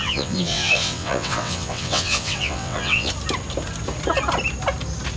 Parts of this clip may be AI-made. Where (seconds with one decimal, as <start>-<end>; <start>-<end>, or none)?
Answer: 0.0-3.1

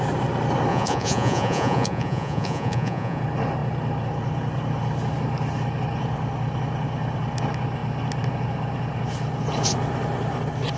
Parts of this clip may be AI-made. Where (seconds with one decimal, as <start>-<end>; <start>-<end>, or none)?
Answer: 0.7-3.2

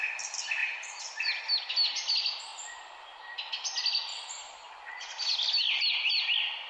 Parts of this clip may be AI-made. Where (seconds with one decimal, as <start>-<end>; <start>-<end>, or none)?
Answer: 0.6-1.4; 4.1-4.7